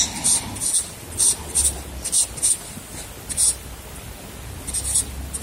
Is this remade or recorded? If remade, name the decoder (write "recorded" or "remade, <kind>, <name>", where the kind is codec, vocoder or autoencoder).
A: recorded